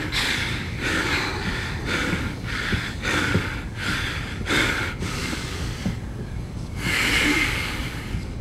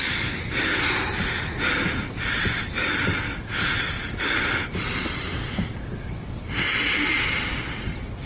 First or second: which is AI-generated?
first